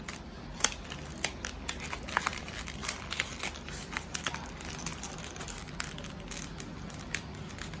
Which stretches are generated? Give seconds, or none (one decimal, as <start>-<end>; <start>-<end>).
2.3-3.0; 4.9-5.4